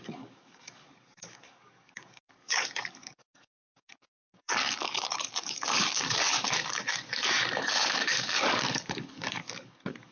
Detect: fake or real fake